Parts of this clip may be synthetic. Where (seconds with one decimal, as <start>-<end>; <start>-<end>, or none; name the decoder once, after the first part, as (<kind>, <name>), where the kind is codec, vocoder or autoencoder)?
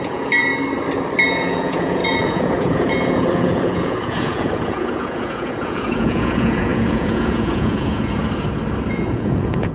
0.0-0.5 (vocoder, Vocos); 1.2-8.2; 8.9-9.7